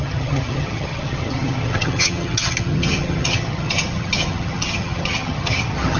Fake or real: fake